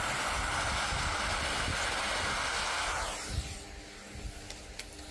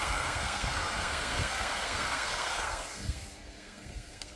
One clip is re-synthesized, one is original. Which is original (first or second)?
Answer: first